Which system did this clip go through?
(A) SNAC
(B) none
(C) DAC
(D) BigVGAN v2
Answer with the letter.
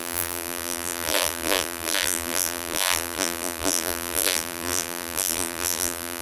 D